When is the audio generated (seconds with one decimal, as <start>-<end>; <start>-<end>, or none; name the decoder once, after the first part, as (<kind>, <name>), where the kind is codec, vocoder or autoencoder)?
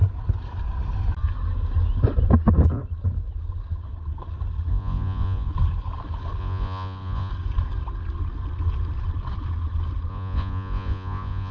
4.7-5.5 (vocoder, Vocos); 6.4-7.3; 10.1-11.5